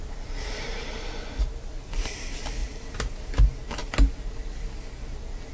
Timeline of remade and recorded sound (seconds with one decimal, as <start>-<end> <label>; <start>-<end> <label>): 0.0-5.5 recorded